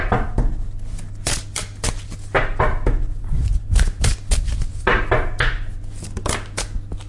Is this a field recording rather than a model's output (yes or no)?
yes